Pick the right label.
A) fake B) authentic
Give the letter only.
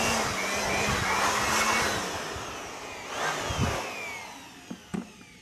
B